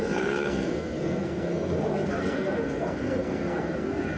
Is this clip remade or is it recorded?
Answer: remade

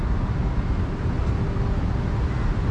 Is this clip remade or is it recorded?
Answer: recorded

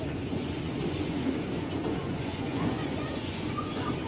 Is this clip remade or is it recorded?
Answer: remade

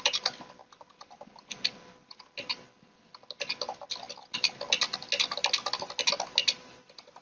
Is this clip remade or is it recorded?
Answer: recorded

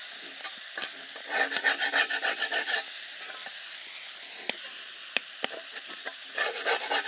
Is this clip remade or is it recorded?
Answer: recorded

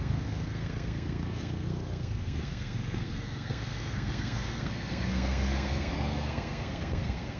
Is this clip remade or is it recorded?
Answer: remade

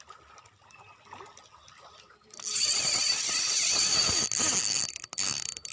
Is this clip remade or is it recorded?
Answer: recorded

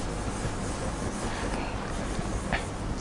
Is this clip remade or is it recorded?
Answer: recorded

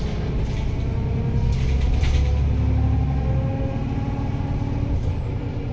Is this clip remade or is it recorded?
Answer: recorded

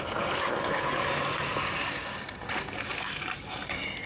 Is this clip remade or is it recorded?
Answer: recorded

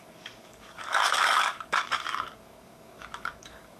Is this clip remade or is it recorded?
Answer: remade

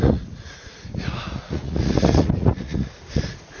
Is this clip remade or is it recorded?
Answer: remade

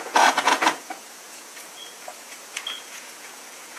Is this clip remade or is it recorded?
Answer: remade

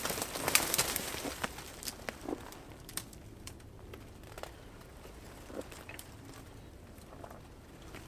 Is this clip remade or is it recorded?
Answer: remade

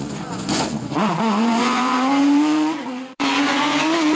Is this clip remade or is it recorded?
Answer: remade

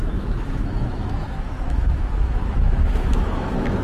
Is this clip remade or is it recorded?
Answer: remade